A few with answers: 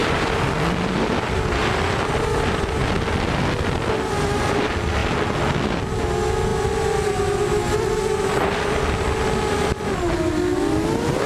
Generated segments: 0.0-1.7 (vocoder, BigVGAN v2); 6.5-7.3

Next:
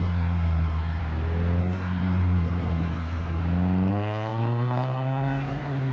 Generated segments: 0.0-1.0 (codec, SNAC); 1.6-3.4; 3.9-5.9

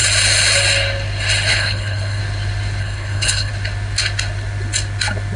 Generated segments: 1.5-2.2 (codec, HILCodec); 2.8-3.5

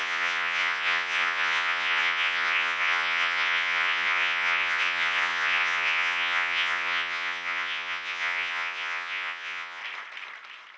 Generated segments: 0.0-9.8 (vocoder, Vocos)